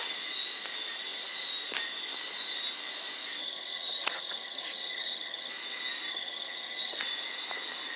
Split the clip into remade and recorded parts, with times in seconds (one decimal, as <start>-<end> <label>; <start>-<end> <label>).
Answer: 0.0-3.4 recorded; 3.4-5.5 remade; 5.5-6.1 recorded; 6.1-7.0 remade; 7.0-8.0 recorded